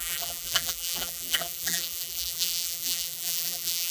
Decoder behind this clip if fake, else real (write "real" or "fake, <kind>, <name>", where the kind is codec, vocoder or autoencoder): fake, vocoder, BigVGAN v2